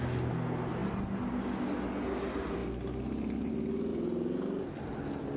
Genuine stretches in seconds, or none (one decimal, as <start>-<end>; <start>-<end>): 0.0-5.4